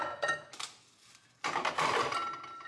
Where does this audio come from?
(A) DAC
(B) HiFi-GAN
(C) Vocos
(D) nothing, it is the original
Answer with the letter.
D